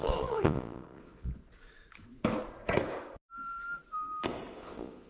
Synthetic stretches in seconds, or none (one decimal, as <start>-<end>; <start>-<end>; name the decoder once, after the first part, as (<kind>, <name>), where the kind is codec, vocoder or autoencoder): 0.0-1.4 (vocoder, Vocos); 4.5-5.1

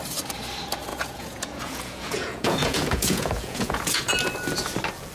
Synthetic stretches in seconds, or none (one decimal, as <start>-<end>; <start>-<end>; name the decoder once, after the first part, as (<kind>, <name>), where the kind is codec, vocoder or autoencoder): 0.9-4.0 (vocoder, Vocos)